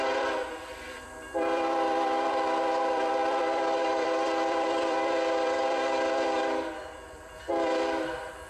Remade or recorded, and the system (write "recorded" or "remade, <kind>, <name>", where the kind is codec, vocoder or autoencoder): remade, vocoder, BigVGAN v2